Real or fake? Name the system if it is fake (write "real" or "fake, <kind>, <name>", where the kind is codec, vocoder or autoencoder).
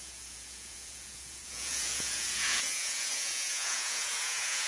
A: fake, vocoder, Vocos